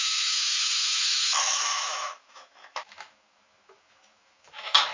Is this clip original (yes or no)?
no